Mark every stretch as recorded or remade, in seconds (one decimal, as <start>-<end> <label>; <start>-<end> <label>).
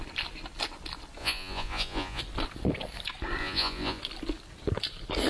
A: 0.0-1.2 recorded; 1.2-2.2 remade; 2.2-3.4 recorded; 3.4-4.0 remade; 4.0-5.3 recorded